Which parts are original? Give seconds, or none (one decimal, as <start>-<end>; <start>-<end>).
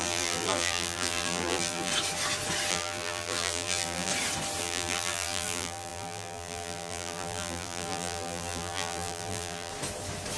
1.9-2.7; 4.1-4.6; 9.7-10.4